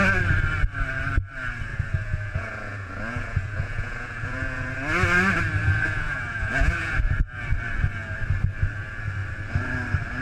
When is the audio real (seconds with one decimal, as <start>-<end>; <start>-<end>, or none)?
0.0-1.7; 4.7-5.6; 7.0-10.2